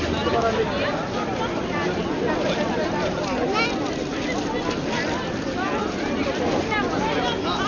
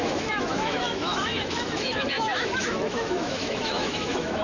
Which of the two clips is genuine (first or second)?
first